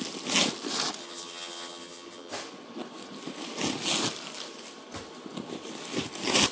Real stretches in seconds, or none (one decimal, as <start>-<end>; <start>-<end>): 0.0-1.0; 2.3-6.5